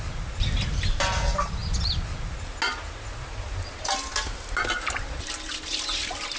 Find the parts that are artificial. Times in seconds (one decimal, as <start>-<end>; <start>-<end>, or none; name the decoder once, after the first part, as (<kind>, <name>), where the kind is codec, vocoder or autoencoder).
none